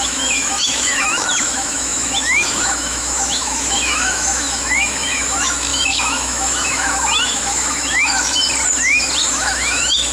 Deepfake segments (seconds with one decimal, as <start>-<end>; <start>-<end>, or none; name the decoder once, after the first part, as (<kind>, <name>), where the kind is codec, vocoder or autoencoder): 0.0-8.4 (autoencoder, DAC-VAE); 9.3-10.1